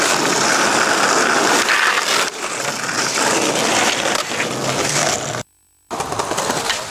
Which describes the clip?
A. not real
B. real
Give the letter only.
B